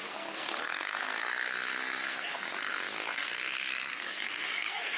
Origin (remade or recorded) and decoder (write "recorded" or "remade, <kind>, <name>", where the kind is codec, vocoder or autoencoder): remade, codec, SNAC